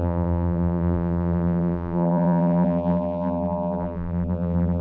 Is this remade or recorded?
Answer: remade